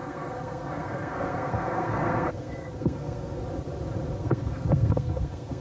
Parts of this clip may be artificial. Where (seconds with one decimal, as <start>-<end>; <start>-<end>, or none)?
0.0-3.4; 4.2-5.6